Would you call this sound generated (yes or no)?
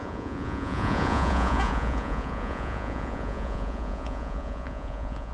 yes